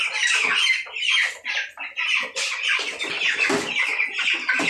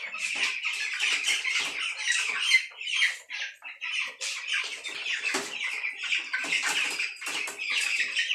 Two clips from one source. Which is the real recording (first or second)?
first